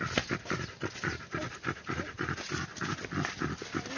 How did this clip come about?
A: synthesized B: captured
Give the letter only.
B